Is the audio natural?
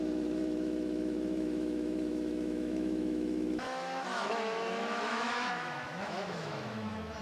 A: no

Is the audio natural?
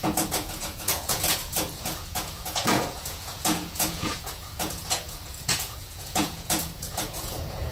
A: no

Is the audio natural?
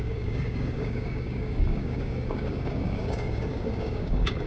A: no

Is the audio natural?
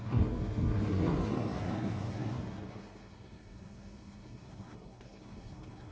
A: no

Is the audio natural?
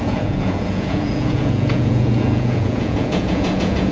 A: no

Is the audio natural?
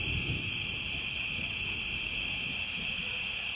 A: yes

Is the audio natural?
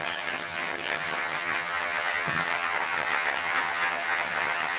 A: no